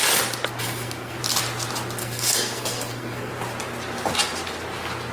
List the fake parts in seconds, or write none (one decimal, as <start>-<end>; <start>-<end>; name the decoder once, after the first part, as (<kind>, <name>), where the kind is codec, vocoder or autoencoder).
0.6-1.2 (codec, SNAC); 2.0-3.3